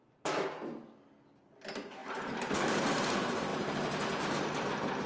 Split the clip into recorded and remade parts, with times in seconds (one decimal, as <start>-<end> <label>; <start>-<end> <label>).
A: 0.0-2.0 recorded; 2.0-2.9 remade; 2.9-3.5 recorded; 3.5-4.4 remade; 4.4-5.1 recorded